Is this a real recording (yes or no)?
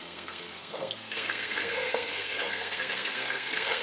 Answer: no